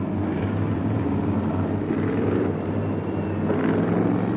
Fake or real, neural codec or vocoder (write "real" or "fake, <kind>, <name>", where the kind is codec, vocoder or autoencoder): real